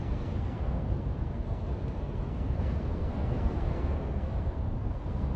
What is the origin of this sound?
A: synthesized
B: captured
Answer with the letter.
A